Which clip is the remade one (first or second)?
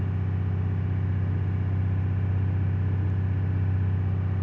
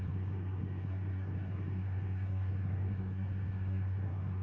second